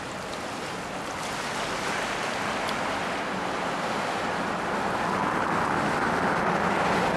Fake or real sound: real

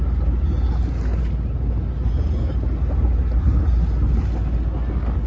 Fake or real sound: real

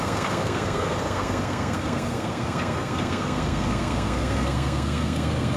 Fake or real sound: fake